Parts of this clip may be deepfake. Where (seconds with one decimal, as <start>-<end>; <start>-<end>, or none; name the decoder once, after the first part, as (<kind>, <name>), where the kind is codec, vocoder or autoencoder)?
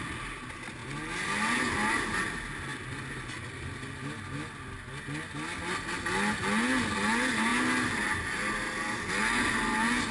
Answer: none